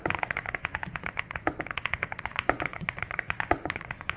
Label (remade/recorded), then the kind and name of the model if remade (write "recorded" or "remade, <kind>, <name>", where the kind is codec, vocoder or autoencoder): remade, vocoder, Vocos